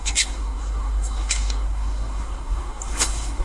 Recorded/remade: remade